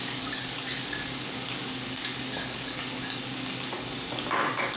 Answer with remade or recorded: remade